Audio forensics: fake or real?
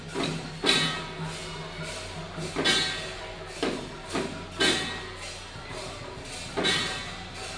real